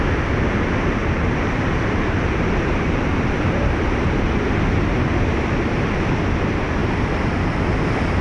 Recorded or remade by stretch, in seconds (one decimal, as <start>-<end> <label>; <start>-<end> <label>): 0.0-1.0 recorded; 1.0-5.9 remade; 5.9-6.8 recorded; 6.8-8.2 remade